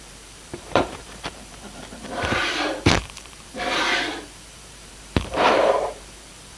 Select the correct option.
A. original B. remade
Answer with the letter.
B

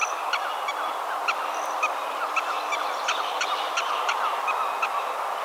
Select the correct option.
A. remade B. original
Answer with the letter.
B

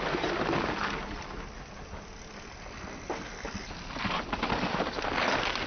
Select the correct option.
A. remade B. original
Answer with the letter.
B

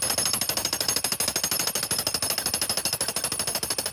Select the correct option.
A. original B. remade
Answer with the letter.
A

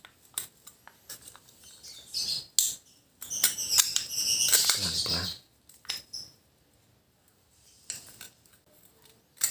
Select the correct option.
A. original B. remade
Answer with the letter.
A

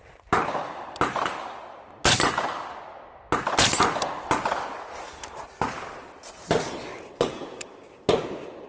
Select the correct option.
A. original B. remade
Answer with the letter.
A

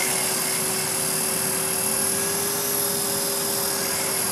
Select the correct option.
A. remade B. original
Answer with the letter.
B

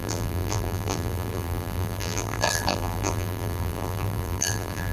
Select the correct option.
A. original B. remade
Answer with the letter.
B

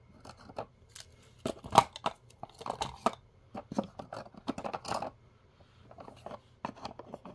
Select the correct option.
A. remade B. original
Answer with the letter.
B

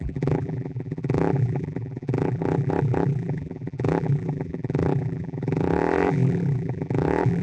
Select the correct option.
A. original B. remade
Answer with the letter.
B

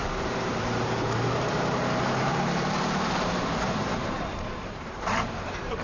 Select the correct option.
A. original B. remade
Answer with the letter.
B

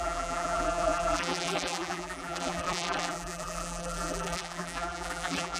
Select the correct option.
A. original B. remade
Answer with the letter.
B